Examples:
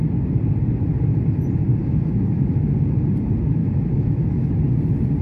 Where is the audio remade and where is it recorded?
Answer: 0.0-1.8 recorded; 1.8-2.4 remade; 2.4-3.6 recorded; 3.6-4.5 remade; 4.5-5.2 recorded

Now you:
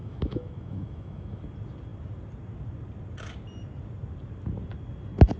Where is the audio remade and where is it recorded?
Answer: 0.0-1.4 remade; 1.4-5.4 recorded